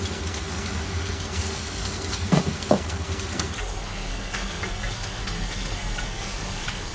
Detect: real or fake fake